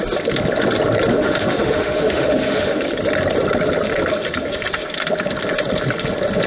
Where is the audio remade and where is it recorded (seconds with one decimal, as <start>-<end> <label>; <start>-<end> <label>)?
0.0-1.1 recorded; 1.1-2.8 remade; 2.8-6.5 recorded